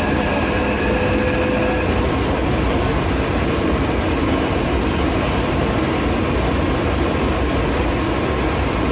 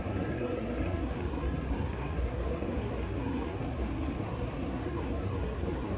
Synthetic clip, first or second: second